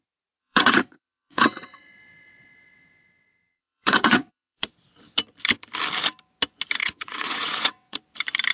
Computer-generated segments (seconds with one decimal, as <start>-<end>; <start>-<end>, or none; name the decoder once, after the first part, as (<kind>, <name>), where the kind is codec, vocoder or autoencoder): 0.4-4.7 (vocoder, WaveNeXt); 6.8-8.0